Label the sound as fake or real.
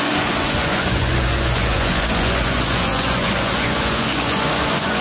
fake